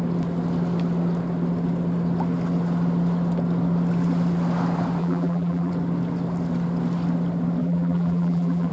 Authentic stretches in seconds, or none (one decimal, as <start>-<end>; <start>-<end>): 0.0-5.0; 5.7-7.6